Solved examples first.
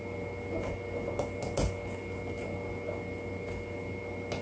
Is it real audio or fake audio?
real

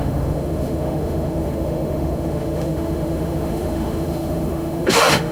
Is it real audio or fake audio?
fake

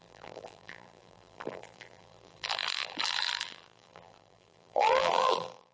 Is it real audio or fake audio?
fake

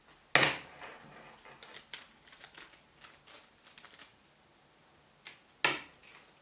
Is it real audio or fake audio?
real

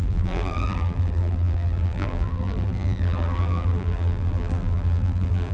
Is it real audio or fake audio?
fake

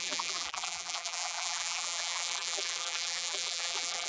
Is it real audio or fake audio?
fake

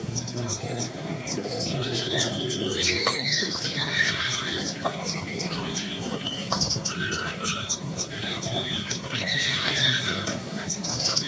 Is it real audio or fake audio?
fake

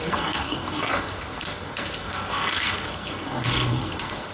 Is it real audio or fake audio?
fake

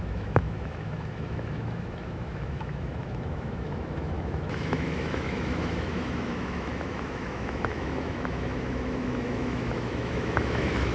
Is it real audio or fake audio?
fake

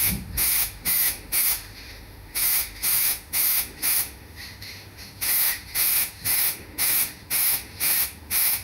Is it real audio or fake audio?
fake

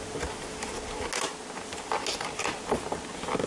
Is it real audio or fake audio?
real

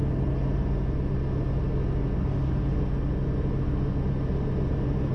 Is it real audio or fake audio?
real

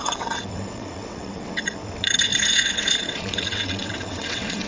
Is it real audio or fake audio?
fake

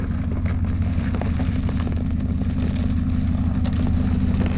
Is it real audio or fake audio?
real